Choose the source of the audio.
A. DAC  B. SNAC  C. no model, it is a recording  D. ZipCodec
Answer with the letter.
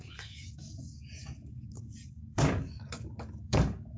A